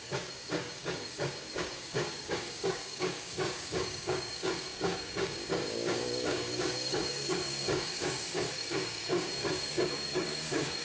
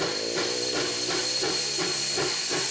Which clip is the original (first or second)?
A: second